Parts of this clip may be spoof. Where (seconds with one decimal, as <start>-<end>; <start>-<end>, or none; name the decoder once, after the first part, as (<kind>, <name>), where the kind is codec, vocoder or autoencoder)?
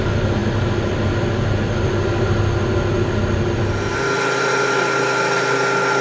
none